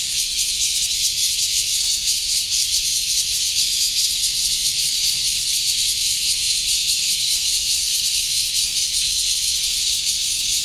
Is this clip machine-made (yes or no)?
yes